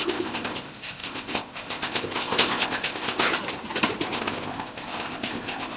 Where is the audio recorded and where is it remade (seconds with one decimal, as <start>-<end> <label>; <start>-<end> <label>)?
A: 0.0-3.3 remade; 3.3-4.1 recorded; 4.1-5.8 remade